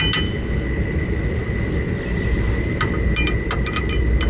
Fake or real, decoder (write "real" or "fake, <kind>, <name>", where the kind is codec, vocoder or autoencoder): real